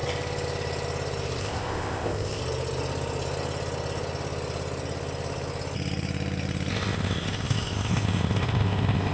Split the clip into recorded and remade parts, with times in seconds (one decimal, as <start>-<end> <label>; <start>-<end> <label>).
0.0-1.4 recorded; 1.4-2.4 remade; 2.4-6.7 recorded; 6.7-9.1 remade